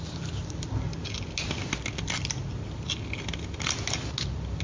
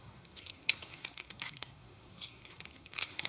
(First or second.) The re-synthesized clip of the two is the second